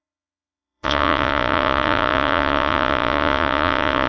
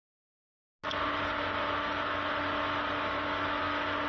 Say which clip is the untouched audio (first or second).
second